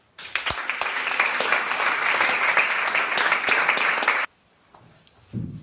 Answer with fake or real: fake